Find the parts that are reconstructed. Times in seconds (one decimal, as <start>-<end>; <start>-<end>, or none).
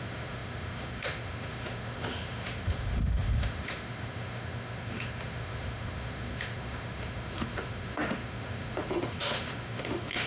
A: 0.0-10.3